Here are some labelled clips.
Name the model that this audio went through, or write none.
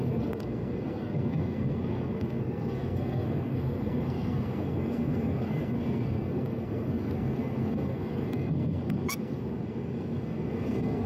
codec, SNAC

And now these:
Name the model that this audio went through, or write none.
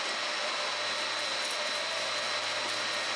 none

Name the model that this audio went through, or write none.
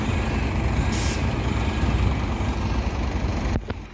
none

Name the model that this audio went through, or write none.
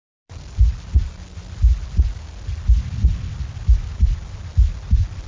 none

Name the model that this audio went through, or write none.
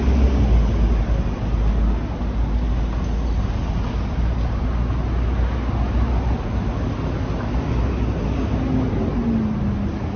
none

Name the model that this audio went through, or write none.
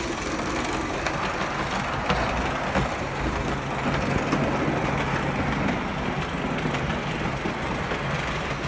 none